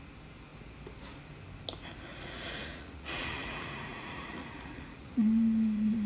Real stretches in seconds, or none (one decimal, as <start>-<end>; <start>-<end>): 0.0-2.1